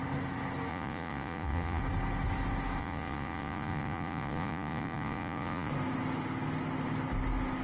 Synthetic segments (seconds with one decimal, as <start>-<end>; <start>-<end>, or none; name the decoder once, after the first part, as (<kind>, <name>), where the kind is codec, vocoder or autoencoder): 0.7-1.8 (vocoder, Vocos); 2.8-5.7